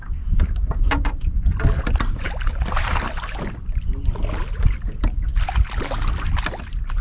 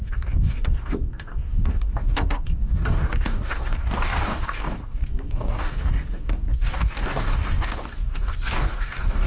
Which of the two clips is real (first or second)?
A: first